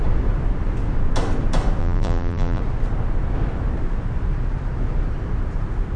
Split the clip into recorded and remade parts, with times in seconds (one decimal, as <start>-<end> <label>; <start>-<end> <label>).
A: 0.0-1.8 recorded; 1.8-2.6 remade; 2.6-6.0 recorded